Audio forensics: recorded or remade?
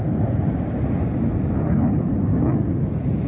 recorded